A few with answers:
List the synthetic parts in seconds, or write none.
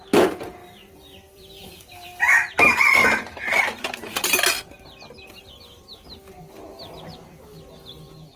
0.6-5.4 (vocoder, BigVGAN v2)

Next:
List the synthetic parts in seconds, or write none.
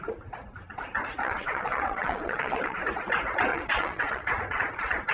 1.2-2.8 (vocoder, WaveNeXt); 3.5-4.3